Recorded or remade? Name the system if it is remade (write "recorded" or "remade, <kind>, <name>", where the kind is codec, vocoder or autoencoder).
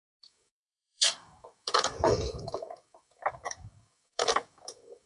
remade, codec, DAC